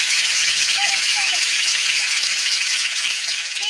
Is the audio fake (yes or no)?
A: yes